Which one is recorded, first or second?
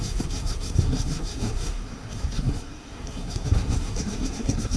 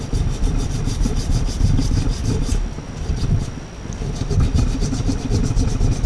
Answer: second